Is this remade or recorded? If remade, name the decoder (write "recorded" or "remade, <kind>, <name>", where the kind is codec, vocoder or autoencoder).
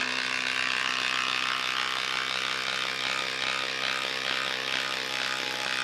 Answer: recorded